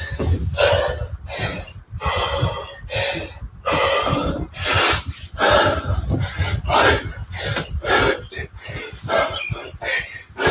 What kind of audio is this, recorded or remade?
recorded